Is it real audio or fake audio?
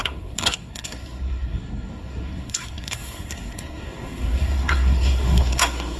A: fake